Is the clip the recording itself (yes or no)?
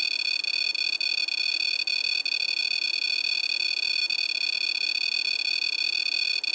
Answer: yes